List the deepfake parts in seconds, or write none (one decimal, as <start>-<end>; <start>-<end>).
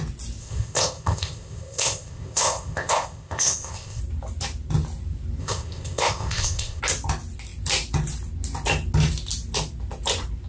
0.4-4.0; 5.4-6.8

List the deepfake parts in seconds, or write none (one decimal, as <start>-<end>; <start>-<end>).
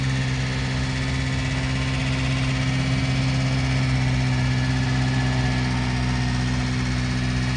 none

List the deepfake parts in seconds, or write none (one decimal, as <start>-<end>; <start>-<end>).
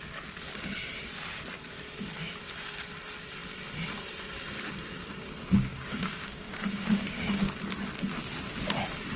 5.7-7.6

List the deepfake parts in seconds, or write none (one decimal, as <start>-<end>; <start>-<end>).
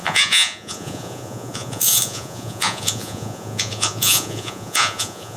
0.0-5.4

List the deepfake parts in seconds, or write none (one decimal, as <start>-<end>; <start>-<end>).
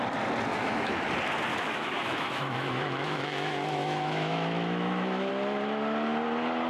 0.5-1.1; 1.5-5.3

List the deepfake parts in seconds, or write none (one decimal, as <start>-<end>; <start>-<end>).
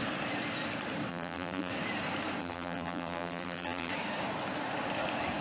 1.1-1.7; 2.4-3.9